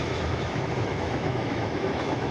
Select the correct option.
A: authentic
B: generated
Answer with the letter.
B